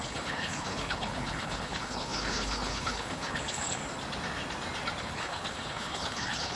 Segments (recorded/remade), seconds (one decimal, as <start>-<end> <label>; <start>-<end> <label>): 0.0-3.8 remade; 3.8-5.0 recorded; 5.0-6.6 remade